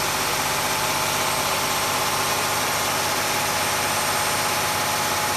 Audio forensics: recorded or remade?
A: recorded